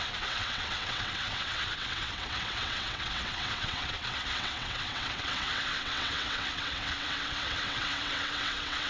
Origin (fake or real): fake